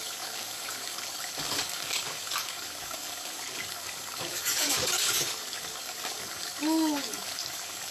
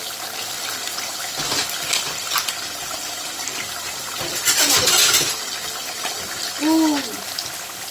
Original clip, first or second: second